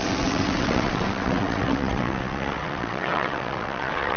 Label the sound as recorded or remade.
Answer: remade